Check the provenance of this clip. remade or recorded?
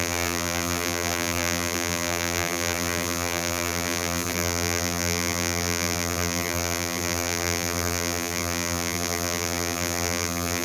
remade